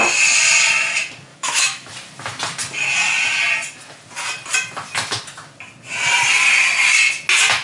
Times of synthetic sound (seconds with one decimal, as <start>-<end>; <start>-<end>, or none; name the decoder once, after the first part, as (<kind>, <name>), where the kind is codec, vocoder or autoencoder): 1.3-1.9 (autoencoder, DAC-VAE)